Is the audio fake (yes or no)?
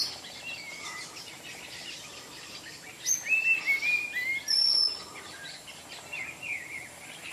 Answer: no